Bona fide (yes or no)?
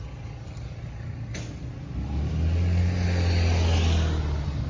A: yes